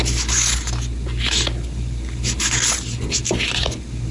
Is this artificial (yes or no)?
no